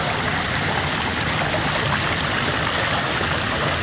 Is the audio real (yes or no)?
yes